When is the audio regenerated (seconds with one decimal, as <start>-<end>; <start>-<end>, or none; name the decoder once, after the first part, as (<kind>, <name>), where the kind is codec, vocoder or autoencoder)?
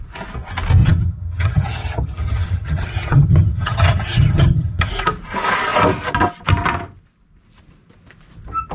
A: 0.8-4.9 (vocoder, HiFi-GAN)